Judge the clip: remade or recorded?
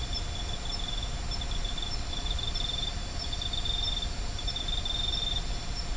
recorded